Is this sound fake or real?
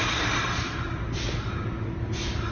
real